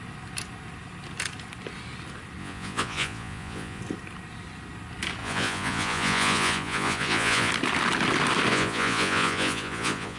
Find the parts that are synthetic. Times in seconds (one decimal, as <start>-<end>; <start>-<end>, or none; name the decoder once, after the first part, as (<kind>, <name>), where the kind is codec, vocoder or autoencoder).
2.4-3.8 (vocoder, Vocos); 5.2-7.5; 8.5-10.2